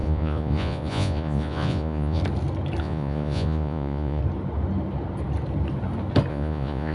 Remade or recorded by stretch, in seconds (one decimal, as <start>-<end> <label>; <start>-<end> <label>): 0.0-2.2 remade; 2.2-2.8 recorded; 2.8-4.2 remade; 4.2-6.3 recorded; 6.3-6.9 remade